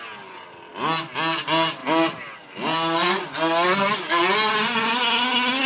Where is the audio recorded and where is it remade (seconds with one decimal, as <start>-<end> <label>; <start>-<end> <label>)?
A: 0.0-5.7 recorded

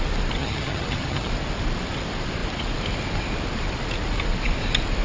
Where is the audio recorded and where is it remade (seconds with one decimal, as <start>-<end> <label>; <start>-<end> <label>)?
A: 0.0-0.4 recorded; 0.4-1.3 remade; 1.3-5.0 recorded

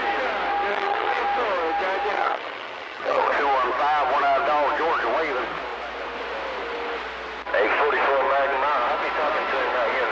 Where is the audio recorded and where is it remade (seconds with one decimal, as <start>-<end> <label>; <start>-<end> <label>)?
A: 0.0-0.7 recorded; 0.7-1.2 remade; 1.2-2.1 recorded; 2.1-3.3 remade; 3.3-10.1 recorded

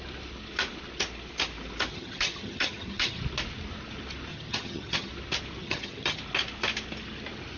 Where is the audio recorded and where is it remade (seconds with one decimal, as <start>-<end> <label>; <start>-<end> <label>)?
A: 0.0-1.9 recorded; 1.9-3.2 remade; 3.2-4.3 recorded; 4.3-5.1 remade; 5.1-5.6 recorded; 5.6-6.2 remade; 6.2-7.6 recorded